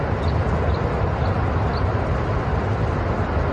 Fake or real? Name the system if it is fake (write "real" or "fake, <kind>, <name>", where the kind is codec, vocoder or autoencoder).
real